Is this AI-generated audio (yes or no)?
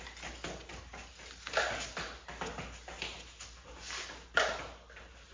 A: no